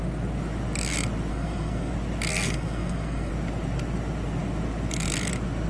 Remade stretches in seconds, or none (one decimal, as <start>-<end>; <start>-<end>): 1.3-1.9; 2.3-3.3